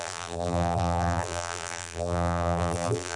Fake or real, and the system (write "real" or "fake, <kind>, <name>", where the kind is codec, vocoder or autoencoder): fake, vocoder, BigVGAN v2